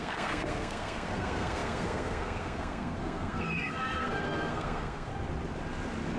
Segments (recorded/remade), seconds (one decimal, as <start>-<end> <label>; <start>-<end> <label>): 0.0-5.1 remade; 5.1-6.2 recorded